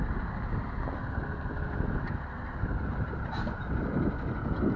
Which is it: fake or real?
real